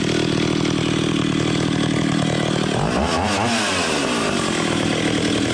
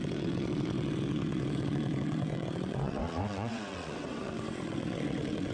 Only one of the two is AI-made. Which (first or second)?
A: second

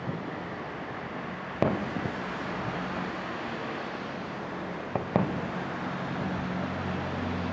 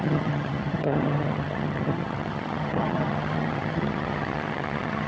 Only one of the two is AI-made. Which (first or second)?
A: second